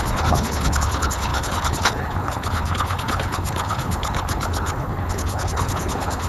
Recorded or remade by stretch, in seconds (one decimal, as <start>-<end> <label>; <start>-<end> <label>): 0.0-6.3 remade

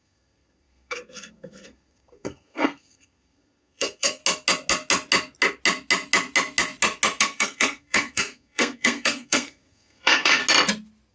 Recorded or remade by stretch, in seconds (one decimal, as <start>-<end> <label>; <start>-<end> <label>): 0.0-4.2 remade; 4.2-7.2 recorded; 7.2-10.4 remade; 10.4-11.1 recorded

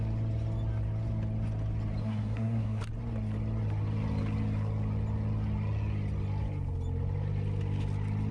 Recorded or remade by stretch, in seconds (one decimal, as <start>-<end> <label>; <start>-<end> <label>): 0.0-2.0 recorded; 2.0-2.8 remade; 2.8-8.3 recorded

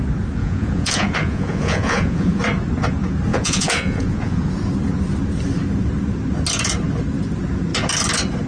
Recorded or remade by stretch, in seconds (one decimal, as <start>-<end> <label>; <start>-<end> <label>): 0.0-0.4 recorded; 0.4-2.4 remade; 2.4-3.3 recorded; 3.3-4.5 remade; 4.5-8.5 recorded